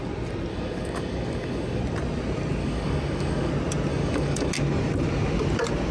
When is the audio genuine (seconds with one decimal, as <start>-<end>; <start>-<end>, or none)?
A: 0.0-0.5; 1.8-2.6; 3.5-3.9; 4.5-5.9